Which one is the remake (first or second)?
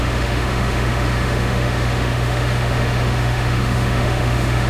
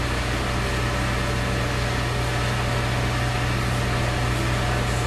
first